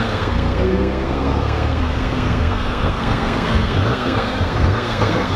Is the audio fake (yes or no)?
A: yes